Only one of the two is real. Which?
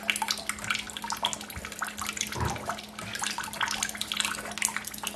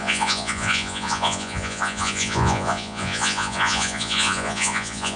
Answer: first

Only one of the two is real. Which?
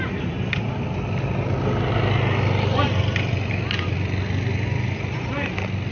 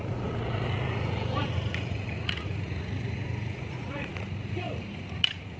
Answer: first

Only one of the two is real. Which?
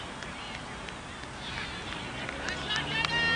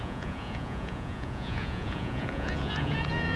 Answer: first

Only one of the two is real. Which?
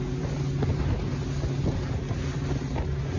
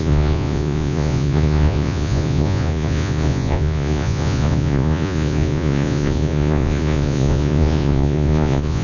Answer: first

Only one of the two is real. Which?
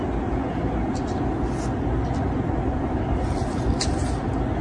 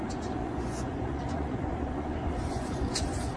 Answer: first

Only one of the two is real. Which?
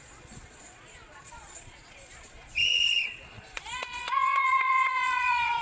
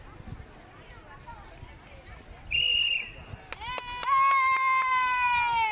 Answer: second